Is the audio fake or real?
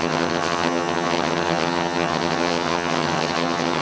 fake